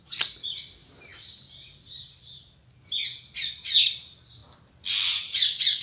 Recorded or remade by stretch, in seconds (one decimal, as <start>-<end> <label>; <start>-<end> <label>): 0.0-5.8 remade